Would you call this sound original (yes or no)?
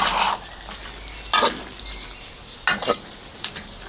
yes